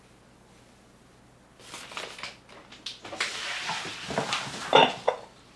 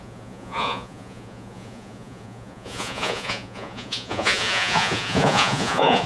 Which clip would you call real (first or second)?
first